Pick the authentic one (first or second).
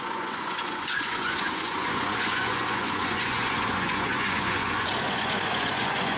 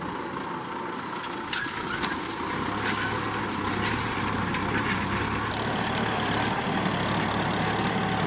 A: second